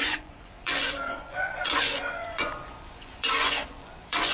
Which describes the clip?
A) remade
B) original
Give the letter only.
A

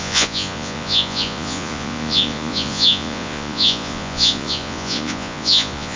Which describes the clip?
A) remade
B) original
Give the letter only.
A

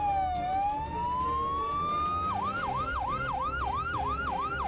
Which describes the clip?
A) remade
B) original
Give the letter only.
B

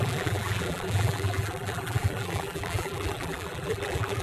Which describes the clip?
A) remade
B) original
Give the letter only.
A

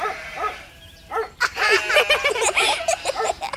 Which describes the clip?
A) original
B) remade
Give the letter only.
B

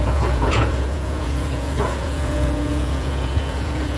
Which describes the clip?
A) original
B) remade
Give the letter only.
B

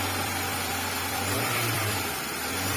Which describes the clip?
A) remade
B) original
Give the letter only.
A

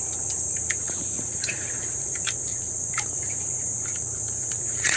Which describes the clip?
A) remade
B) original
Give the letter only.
A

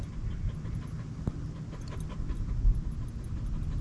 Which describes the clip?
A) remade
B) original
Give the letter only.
B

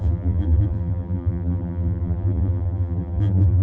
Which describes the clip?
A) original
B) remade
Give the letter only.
B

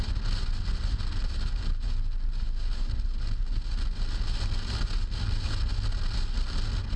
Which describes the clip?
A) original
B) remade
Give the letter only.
A